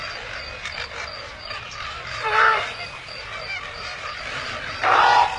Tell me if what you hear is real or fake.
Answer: fake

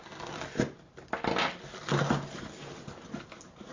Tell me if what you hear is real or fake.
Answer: real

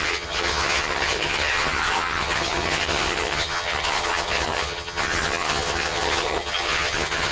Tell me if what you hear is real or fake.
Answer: fake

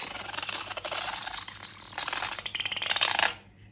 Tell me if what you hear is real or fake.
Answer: real